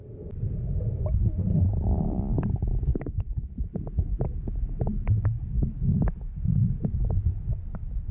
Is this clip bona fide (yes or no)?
yes